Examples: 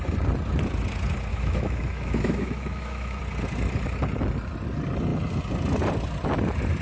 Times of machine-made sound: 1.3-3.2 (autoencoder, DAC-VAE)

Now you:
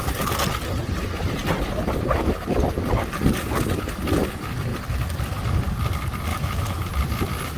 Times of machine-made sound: 6.3-6.9 (autoencoder, DAC-VAE)

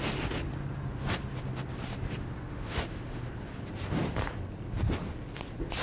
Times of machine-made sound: 2.5-3.3 (autoencoder, DAC-VAE)

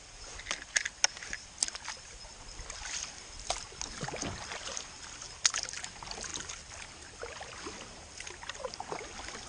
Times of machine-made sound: none

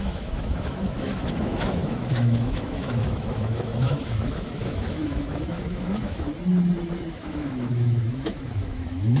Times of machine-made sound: 0.0-6.3 (autoencoder, DAC-VAE); 7.1-9.2